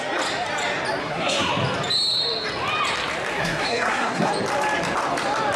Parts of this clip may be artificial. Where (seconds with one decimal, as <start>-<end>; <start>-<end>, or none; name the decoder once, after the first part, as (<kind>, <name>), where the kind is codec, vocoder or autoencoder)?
1.0-1.5 (codec, SNAC); 3.3-4.3